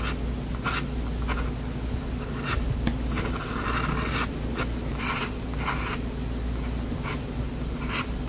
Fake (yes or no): no